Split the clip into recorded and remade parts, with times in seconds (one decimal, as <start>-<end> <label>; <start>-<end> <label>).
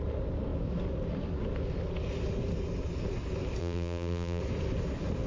0.0-3.6 recorded; 3.6-4.4 remade; 4.4-5.3 recorded